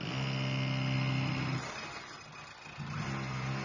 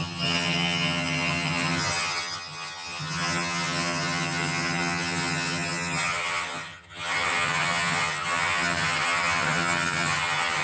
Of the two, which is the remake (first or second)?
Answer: second